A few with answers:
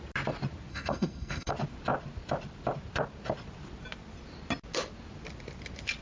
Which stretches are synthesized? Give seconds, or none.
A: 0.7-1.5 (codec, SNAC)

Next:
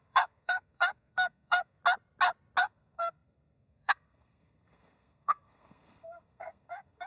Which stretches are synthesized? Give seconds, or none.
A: 0.0-1.8 (codec, SNAC); 2.6-7.1

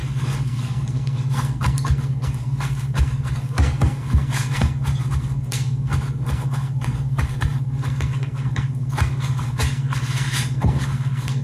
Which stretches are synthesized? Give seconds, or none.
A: 0.0-11.4 (codec, SNAC)

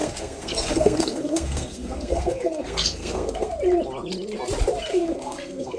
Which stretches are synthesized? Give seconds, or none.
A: 0.0-3.5 (codec, SNAC); 4.9-5.8